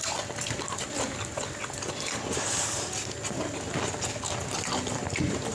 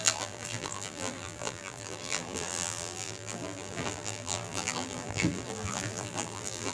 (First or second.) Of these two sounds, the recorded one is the first